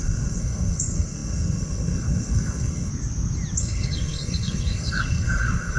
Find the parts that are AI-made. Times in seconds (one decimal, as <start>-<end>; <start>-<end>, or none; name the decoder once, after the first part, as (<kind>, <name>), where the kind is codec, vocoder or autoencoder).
0.0-2.9 (codec, SNAC); 3.6-5.8